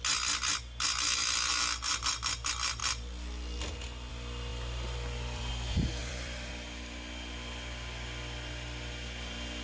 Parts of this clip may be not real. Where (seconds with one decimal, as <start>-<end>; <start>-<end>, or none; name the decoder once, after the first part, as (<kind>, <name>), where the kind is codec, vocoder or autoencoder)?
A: 4.5-5.5 (vocoder, BigVGAN v2); 6.0-6.5